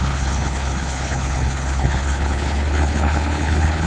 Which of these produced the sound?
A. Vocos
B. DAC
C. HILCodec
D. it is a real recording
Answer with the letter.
C